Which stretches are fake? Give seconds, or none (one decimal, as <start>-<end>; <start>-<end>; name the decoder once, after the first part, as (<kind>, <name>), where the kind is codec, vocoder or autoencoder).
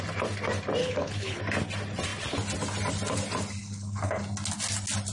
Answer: 0.8-1.4 (codec, HILCodec); 3.6-4.2